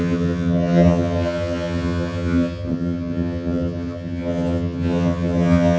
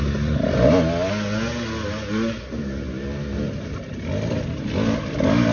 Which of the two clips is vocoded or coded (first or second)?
first